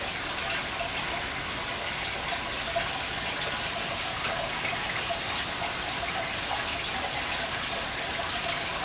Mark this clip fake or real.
real